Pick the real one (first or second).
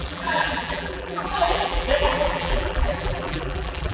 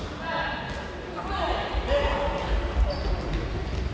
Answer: second